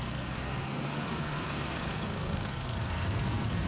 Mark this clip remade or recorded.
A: remade